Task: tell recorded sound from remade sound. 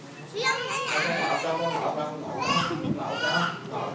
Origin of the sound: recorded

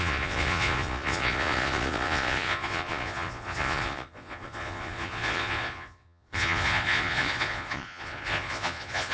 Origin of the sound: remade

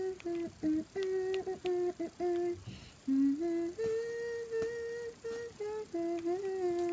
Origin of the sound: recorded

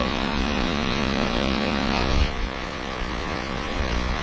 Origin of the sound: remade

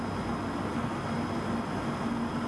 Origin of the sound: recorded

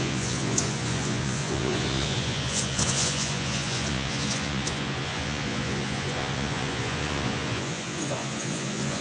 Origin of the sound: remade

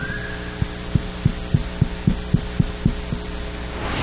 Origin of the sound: recorded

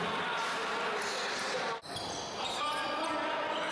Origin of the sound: recorded